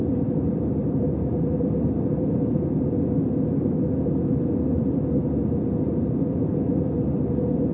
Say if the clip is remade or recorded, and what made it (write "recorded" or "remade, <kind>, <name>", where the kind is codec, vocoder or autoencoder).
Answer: recorded